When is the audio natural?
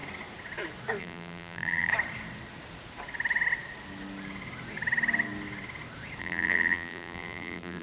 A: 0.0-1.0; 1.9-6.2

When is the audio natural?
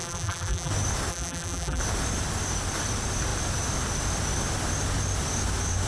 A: 0.7-1.1; 1.8-5.9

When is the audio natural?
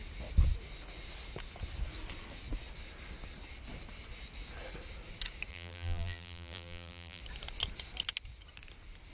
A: 0.0-5.5; 7.2-9.1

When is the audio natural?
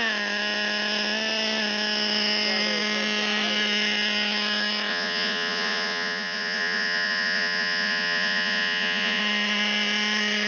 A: 0.0-4.9; 9.2-10.5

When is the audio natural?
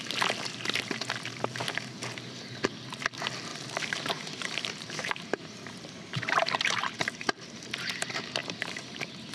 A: 0.0-3.5; 7.9-9.3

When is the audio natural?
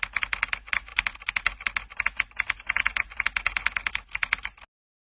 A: 0.0-5.0